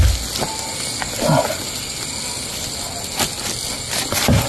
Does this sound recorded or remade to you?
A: recorded